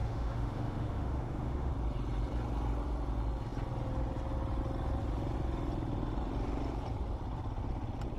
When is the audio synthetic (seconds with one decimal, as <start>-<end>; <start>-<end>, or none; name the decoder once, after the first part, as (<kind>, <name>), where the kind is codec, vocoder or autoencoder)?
0.0-1.7 (autoencoder, DAC-VAE)